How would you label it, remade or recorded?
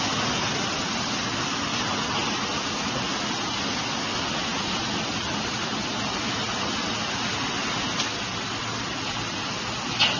recorded